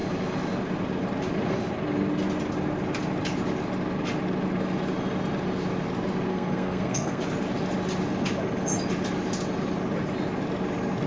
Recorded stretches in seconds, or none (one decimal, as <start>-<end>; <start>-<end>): 0.0-6.3; 7.2-11.1